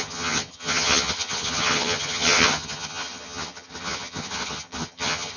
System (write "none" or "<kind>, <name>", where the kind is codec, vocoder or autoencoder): vocoder, HiFi-GAN